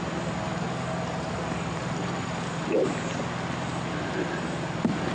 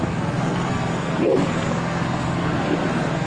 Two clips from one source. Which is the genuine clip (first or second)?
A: first